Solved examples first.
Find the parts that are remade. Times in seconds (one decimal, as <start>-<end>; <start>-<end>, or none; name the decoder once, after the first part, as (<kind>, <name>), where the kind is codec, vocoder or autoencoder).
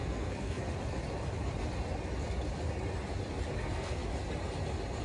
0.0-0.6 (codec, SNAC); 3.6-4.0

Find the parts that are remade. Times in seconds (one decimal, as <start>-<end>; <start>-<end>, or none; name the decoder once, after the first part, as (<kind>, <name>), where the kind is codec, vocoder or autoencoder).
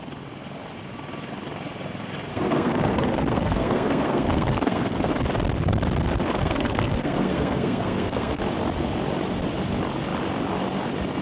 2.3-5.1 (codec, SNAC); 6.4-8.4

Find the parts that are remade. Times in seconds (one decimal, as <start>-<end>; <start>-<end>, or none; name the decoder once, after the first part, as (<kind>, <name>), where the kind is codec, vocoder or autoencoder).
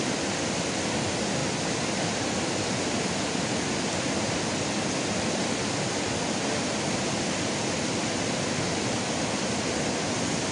none